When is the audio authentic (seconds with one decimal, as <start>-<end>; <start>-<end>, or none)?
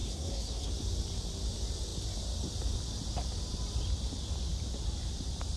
0.7-5.6